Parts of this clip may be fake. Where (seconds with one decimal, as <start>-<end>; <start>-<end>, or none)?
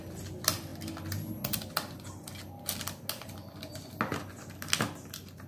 none